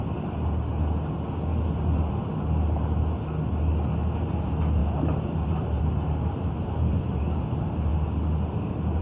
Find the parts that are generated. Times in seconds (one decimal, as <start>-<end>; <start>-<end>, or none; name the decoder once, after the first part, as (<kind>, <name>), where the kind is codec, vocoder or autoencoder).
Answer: 1.5-2.1 (vocoder, BigVGAN v2); 4.8-7.2